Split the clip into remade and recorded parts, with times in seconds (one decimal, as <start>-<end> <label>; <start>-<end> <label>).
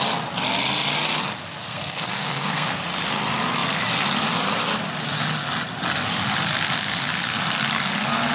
0.0-1.6 recorded; 1.6-2.8 remade; 2.8-8.3 recorded